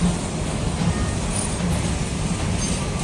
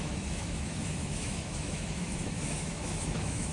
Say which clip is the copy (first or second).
second